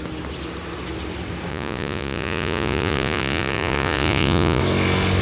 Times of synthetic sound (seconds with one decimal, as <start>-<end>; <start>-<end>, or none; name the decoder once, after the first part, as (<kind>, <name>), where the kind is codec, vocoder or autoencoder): 1.5-4.6 (vocoder, Vocos)